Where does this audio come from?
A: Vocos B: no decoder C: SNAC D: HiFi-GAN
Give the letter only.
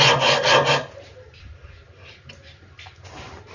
B